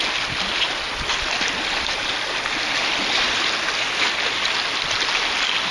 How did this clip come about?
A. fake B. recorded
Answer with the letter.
B